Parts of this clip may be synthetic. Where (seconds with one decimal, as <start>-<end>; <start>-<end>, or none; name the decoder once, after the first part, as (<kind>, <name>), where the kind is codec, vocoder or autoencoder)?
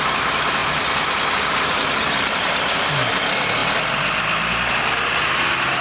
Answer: none